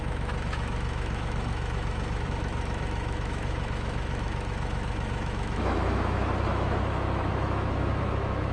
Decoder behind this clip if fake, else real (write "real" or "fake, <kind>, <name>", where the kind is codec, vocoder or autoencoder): fake, autoencoder, DAC-VAE